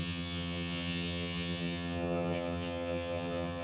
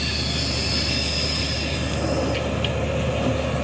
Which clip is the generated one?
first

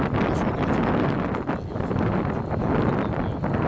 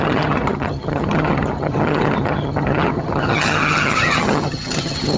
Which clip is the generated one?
second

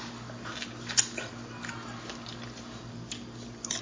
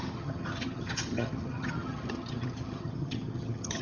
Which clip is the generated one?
second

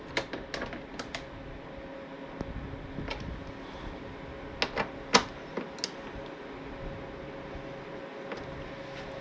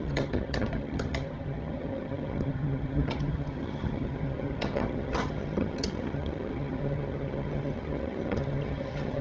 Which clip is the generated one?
second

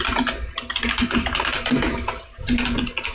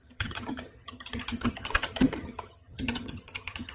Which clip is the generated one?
second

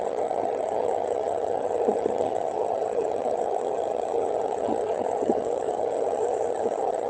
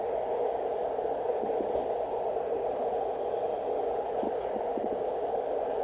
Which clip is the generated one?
first